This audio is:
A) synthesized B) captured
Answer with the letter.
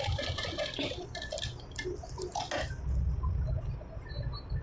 B